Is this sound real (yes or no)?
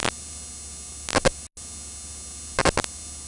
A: yes